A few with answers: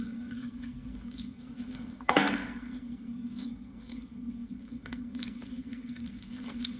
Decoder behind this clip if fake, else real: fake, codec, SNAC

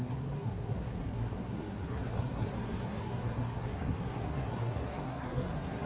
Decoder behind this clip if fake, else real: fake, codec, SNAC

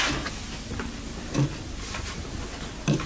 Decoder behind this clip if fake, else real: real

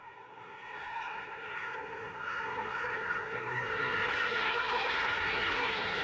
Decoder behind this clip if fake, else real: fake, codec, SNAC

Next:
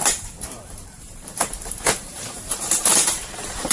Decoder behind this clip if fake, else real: fake, vocoder, BigVGAN v2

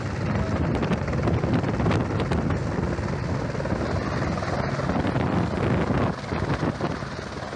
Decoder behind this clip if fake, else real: real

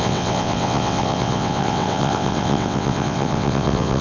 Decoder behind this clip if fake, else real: fake, vocoder, WaveNeXt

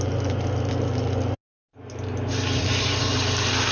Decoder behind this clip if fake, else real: real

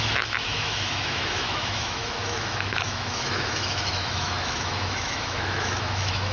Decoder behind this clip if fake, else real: fake, autoencoder, DAC-VAE